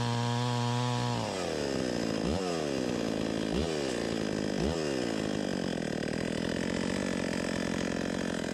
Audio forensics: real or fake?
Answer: real